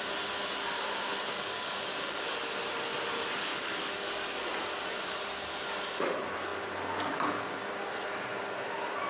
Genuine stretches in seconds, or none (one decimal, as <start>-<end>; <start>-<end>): 0.0-1.3; 2.3-9.1